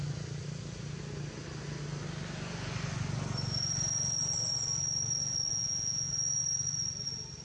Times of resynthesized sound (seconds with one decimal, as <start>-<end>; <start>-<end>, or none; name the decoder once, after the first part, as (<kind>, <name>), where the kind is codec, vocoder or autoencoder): 5.5-6.1 (vocoder, Vocos)